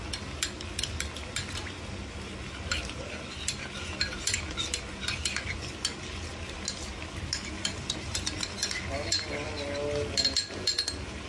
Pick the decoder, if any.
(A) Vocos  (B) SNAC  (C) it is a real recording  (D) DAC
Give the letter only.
C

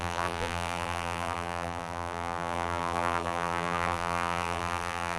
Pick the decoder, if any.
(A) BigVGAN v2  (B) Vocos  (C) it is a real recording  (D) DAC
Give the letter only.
A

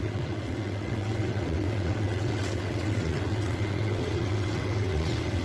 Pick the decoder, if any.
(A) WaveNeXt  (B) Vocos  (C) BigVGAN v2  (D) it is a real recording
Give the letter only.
A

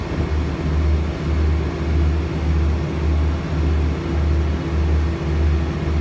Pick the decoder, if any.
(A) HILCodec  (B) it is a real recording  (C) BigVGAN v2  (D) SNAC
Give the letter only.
B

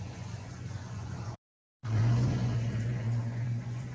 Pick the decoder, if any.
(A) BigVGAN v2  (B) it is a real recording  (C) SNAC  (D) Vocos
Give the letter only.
D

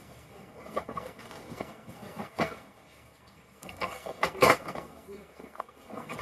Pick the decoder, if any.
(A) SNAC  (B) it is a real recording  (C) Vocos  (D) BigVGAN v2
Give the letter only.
A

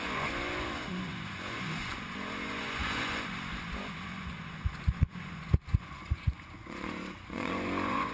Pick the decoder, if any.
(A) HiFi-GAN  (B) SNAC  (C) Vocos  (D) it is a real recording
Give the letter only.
C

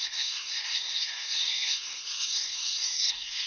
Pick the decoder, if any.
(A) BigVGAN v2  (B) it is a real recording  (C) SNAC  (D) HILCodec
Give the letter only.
C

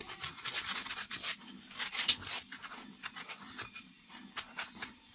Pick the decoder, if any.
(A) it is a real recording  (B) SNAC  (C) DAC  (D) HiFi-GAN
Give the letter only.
A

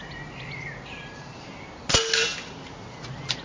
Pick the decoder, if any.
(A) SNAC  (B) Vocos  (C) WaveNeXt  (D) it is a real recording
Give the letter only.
D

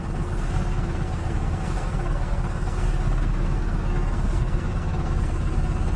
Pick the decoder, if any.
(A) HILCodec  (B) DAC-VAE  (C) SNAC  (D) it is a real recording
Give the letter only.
C